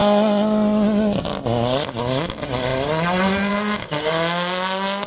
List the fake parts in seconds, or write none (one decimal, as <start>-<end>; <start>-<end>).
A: none